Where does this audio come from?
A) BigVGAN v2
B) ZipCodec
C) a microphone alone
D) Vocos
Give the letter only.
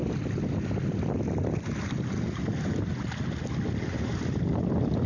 C